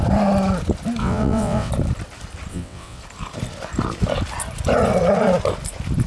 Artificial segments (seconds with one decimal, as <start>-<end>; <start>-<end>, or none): 1.0-1.7; 2.5-3.0